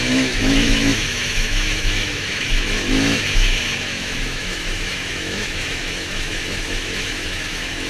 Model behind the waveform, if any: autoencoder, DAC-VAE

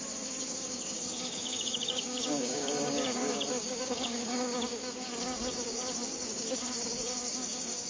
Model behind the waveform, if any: codec, DAC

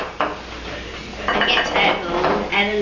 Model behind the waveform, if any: none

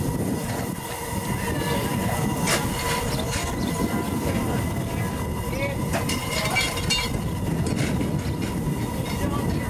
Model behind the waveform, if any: none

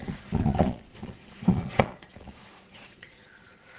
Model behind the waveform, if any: vocoder, Vocos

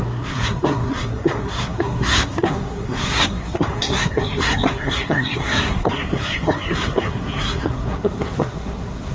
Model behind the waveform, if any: codec, SNAC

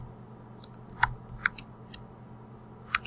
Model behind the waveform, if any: none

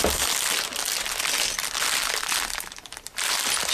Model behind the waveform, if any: none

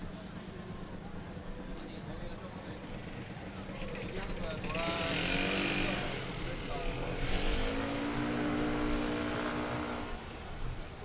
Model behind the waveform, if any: none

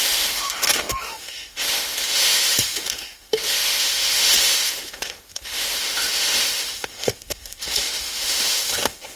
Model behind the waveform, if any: autoencoder, DAC-VAE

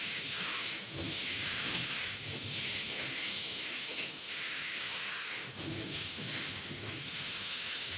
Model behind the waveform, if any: autoencoder, DAC-VAE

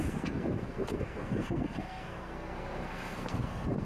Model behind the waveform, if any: codec, SNAC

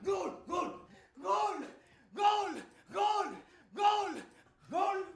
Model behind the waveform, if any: none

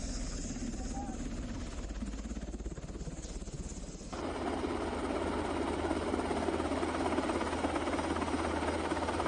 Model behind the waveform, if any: none